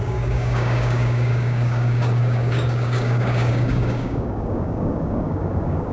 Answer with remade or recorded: remade